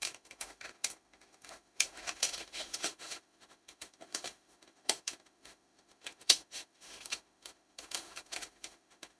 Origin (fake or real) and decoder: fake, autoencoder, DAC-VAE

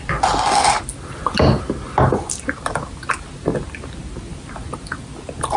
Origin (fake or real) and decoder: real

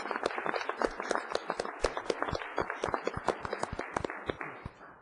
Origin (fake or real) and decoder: real